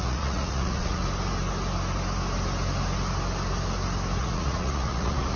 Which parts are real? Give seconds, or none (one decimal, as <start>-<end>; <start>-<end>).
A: 1.0-4.2